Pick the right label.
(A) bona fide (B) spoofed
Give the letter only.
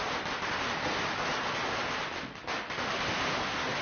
A